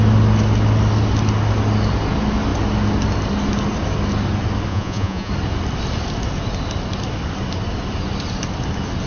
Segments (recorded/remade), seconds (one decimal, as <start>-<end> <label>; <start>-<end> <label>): 0.0-4.7 recorded; 4.7-5.3 remade; 5.3-9.1 recorded